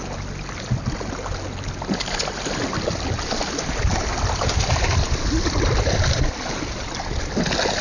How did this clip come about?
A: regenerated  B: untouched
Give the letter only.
B